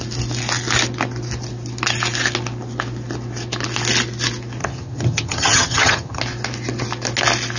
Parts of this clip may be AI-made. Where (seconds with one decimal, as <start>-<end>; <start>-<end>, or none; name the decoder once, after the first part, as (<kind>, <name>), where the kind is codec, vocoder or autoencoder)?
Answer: 4.6-6.2 (vocoder, HiFi-GAN)